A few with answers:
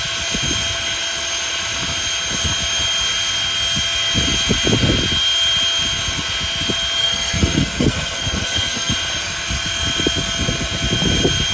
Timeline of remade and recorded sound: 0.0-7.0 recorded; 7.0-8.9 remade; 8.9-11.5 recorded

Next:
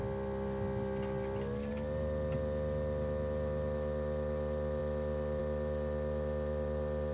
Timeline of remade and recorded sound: 0.0-1.7 remade; 1.7-7.1 recorded

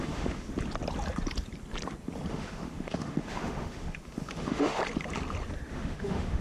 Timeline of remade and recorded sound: 0.0-0.5 remade; 0.5-2.3 recorded; 2.3-4.8 remade; 4.8-5.7 recorded; 5.7-6.4 remade

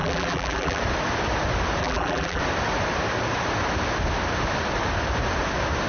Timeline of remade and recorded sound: 0.0-0.8 remade; 0.8-1.8 recorded; 1.8-2.4 remade; 2.4-5.9 recorded

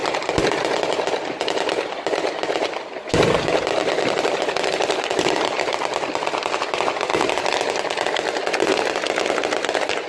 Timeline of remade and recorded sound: 0.0-10.1 recorded

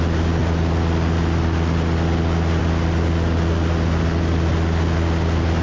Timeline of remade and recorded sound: 0.0-5.6 recorded

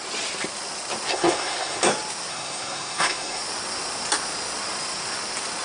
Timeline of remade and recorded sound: 0.0-1.1 recorded; 1.1-1.8 remade; 1.8-2.3 recorded; 2.3-3.4 remade; 3.4-5.6 recorded